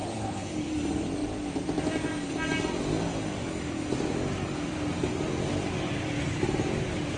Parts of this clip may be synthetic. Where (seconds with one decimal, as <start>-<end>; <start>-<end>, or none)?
0.0-0.7